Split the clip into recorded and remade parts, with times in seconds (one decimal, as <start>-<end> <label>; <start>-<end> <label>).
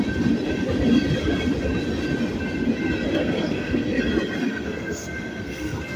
0.0-3.2 recorded; 3.2-4.0 remade; 4.0-4.4 recorded; 4.4-6.0 remade